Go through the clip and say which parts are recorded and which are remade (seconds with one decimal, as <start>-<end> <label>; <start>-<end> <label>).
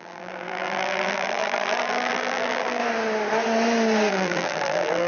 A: 0.0-2.8 remade; 2.8-4.1 recorded; 4.1-5.1 remade